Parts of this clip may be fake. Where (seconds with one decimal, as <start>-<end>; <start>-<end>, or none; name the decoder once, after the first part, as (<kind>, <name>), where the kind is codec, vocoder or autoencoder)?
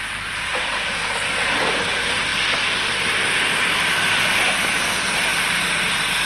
0.0-2.3 (vocoder, BigVGAN v2); 4.6-5.3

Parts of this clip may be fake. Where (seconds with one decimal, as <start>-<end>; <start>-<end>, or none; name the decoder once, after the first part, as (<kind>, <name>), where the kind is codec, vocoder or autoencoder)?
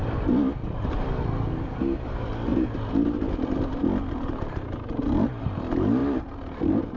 2.5-3.8 (vocoder, BigVGAN v2); 6.0-7.0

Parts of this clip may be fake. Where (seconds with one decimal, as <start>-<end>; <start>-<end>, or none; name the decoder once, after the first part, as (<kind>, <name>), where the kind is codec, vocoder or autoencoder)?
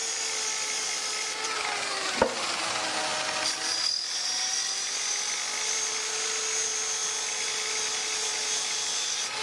0.0-2.6 (vocoder, BigVGAN v2); 3.1-6.0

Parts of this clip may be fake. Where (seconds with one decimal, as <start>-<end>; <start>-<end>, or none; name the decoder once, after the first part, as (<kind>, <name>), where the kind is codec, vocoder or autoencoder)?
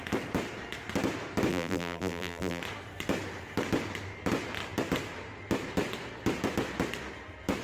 1.5-2.6 (vocoder, BigVGAN v2)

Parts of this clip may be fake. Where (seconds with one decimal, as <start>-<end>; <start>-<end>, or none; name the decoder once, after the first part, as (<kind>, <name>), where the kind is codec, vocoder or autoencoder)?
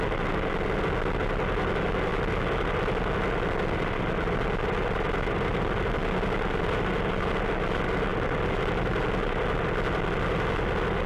none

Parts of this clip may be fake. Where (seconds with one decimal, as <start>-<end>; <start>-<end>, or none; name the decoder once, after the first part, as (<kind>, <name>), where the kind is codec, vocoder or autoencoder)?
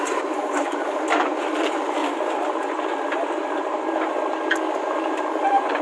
0.0-2.0 (vocoder, BigVGAN v2); 4.7-5.8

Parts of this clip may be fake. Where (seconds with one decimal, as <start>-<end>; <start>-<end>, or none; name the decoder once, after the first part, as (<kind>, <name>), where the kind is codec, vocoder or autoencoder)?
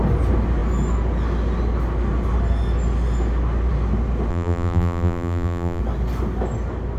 4.3-5.8 (vocoder, BigVGAN v2)